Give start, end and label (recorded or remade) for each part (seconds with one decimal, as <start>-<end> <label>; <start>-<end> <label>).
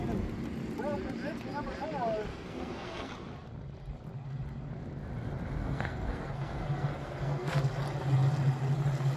0.0-2.3 recorded; 2.3-3.1 remade; 3.1-5.6 recorded; 5.6-7.7 remade; 7.7-9.2 recorded